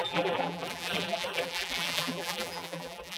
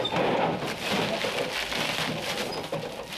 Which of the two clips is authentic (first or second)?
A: second